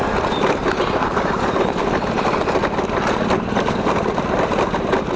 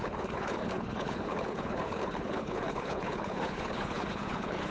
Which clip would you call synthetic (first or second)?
second